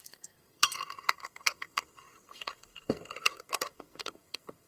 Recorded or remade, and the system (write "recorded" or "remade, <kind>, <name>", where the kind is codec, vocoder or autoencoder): remade, codec, SNAC